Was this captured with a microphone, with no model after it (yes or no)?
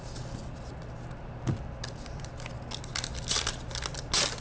yes